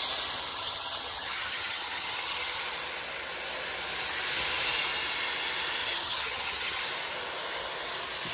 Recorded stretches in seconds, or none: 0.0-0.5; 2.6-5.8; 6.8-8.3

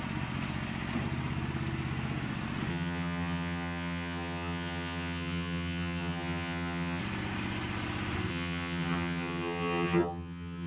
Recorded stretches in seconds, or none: 0.0-2.7; 7.0-8.3

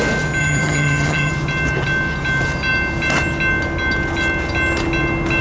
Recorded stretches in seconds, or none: 0.0-0.4; 1.3-5.4

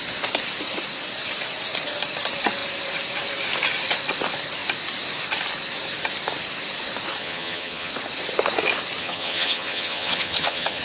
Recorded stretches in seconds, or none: 0.0-7.2; 7.9-9.0

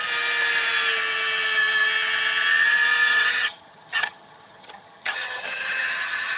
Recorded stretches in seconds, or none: 0.0-3.1

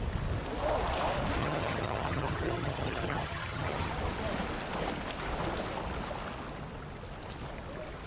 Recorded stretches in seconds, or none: 0.0-1.4; 3.9-8.1

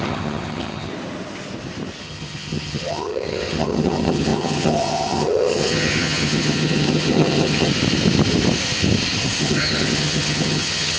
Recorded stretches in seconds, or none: 0.9-2.0; 7.7-9.4

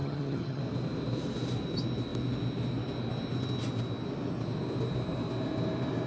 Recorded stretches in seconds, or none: 0.6-6.1